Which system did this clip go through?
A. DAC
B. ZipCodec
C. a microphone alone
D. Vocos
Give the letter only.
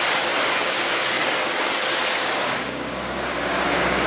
A